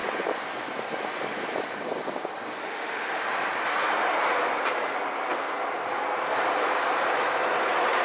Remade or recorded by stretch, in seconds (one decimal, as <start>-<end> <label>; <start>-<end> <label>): 0.0-2.6 recorded; 2.6-3.2 remade; 3.2-8.0 recorded